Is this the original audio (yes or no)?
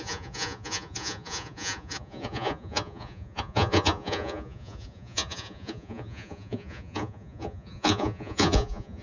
no